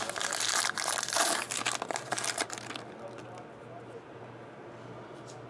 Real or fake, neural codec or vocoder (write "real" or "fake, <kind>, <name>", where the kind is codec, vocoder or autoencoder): real